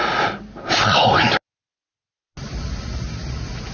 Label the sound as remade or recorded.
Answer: recorded